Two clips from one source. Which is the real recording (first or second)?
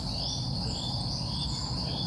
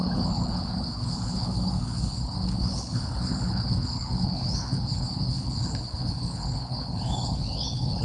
first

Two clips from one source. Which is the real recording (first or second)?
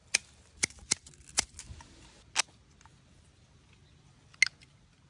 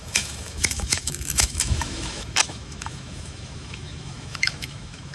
first